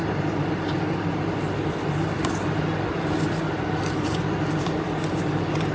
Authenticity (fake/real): real